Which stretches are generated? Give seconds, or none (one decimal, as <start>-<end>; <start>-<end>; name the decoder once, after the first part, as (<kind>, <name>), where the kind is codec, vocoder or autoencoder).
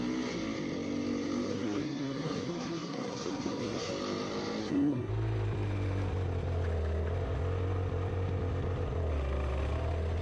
1.5-3.9 (codec, SNAC); 4.6-5.1